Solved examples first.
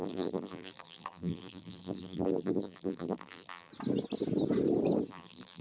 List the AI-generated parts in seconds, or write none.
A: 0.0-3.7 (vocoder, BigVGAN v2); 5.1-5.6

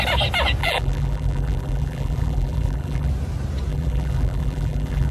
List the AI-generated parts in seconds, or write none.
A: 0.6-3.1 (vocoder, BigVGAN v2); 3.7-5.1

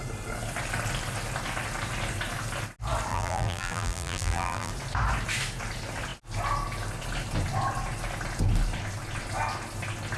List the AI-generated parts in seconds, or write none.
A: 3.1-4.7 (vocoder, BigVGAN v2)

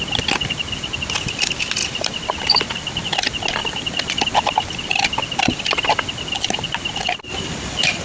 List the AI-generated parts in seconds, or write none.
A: 1.8-2.6 (vocoder, BigVGAN v2)

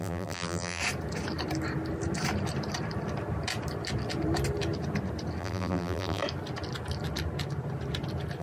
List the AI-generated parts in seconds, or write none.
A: 0.0-0.8 (vocoder, BigVGAN v2); 5.4-6.2